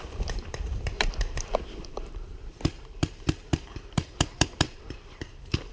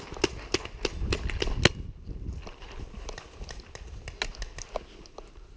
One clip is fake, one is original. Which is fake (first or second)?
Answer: first